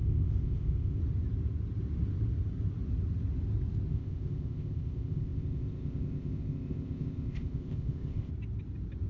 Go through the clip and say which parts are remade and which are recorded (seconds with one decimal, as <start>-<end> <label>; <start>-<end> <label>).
0.0-1.0 remade; 1.0-3.9 recorded; 3.9-8.3 remade; 8.3-9.1 recorded